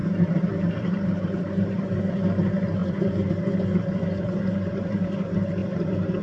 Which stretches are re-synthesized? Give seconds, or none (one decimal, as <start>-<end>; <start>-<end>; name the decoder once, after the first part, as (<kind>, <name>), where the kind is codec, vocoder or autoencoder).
0.0-2.0 (vocoder, BigVGAN v2); 2.8-5.1; 5.6-6.2